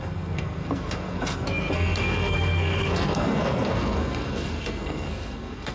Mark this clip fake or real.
fake